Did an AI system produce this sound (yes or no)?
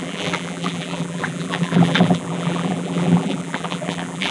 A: yes